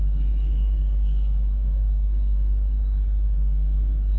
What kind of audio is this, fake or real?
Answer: fake